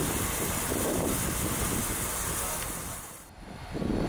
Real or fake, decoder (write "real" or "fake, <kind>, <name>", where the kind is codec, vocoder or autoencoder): real